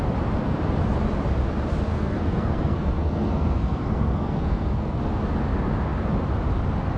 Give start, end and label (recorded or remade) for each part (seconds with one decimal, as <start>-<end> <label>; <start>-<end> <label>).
0.0-1.9 recorded; 1.9-5.0 remade; 5.0-7.0 recorded